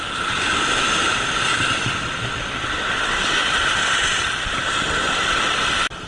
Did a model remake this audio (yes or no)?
yes